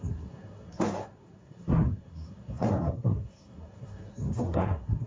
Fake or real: fake